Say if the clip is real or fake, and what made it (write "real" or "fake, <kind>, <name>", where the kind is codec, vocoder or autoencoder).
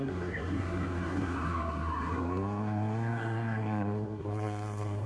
fake, codec, SNAC